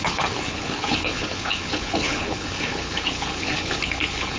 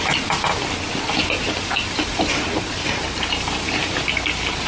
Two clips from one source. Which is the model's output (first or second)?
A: first